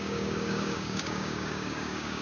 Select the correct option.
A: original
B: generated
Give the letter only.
B